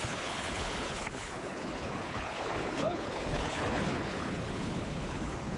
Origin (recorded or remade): remade